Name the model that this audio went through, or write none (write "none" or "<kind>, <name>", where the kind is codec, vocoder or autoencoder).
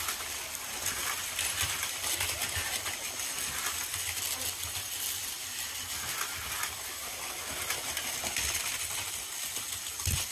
none